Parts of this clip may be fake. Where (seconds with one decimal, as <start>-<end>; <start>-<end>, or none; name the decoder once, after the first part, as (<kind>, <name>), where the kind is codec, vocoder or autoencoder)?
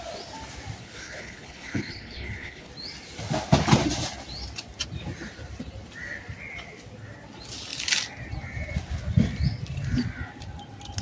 0.8-2.7 (codec, HILCodec)